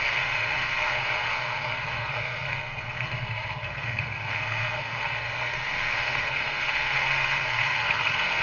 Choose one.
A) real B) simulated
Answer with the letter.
B